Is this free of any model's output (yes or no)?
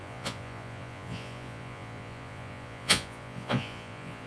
no